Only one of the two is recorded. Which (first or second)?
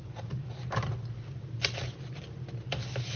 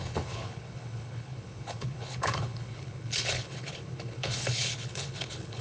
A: first